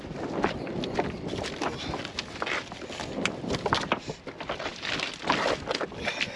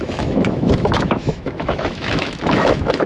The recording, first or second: first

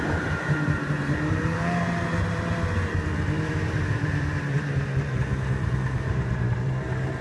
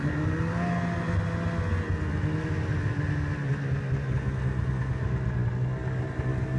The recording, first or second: second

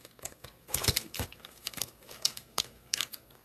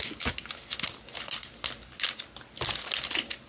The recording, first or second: second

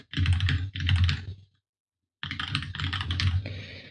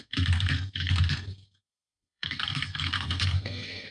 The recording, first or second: first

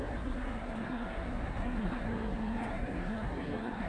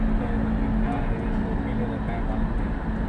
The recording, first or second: second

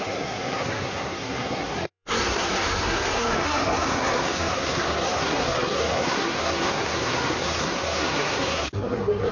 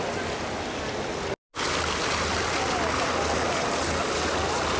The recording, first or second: second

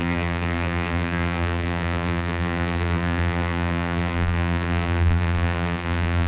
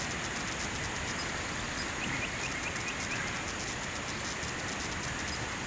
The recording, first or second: second